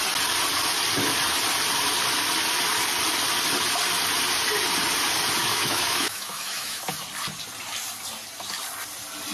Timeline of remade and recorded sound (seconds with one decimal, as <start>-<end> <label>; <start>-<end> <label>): 0.0-5.4 recorded; 5.4-6.8 remade; 6.8-9.3 recorded